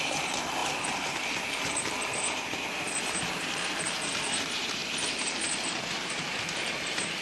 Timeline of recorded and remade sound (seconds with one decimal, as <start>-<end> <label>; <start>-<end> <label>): 0.0-7.2 remade